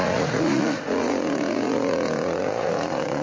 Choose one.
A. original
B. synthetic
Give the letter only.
B